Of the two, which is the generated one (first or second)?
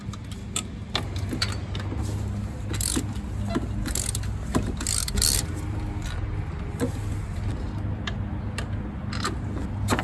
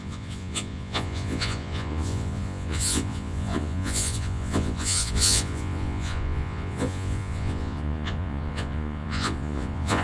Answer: second